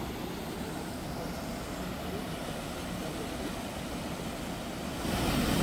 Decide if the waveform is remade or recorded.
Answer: recorded